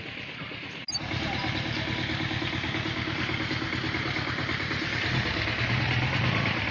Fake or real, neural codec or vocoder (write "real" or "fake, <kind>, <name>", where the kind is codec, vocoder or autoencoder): real